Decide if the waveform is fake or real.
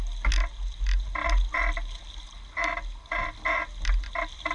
real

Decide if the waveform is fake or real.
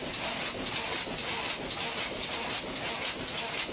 real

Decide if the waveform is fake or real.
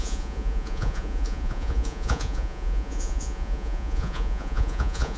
fake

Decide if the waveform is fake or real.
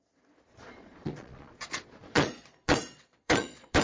fake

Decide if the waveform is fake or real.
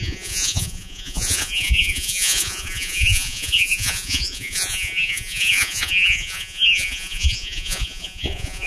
fake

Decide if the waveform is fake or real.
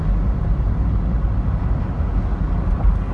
real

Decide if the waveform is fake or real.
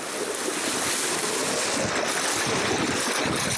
real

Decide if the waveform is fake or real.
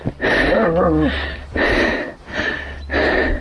real